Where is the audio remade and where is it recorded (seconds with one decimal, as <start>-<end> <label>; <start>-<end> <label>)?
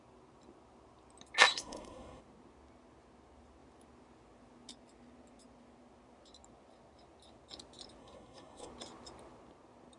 0.0-1.5 recorded; 1.5-2.2 remade; 2.2-8.0 recorded; 8.0-8.7 remade; 8.7-10.0 recorded